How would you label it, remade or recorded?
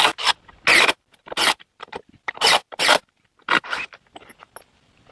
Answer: recorded